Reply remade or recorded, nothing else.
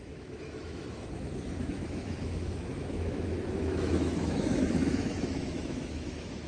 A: remade